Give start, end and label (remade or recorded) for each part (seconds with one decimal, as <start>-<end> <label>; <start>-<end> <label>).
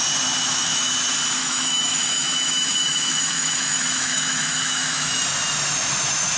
0.0-0.4 recorded; 0.4-0.9 remade; 0.9-1.4 recorded; 1.4-5.2 remade; 5.2-6.4 recorded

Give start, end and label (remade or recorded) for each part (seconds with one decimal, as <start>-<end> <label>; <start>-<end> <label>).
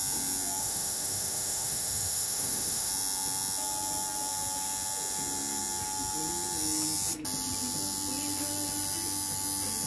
0.0-0.6 recorded; 0.6-2.9 remade; 2.9-9.9 recorded